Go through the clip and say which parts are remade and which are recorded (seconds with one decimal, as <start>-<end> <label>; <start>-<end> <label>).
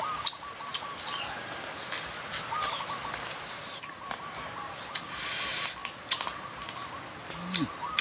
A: 0.0-8.0 recorded